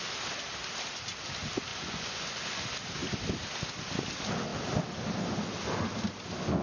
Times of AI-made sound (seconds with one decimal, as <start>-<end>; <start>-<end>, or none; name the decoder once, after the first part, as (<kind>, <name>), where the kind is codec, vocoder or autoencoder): 1.7-2.6 (vocoder, Vocos)